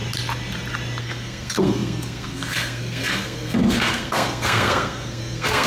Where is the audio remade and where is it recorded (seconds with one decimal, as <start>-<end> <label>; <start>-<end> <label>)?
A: 0.0-1.0 recorded; 1.0-5.7 remade